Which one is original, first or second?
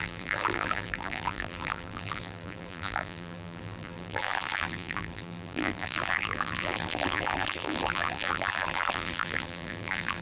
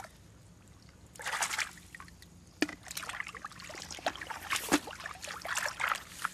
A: second